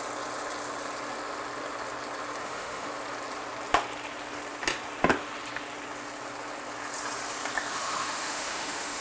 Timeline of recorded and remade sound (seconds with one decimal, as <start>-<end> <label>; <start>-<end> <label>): 0.0-2.4 recorded; 2.4-2.9 remade; 2.9-7.7 recorded; 7.7-9.0 remade